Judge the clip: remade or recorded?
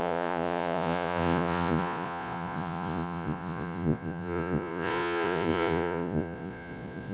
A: remade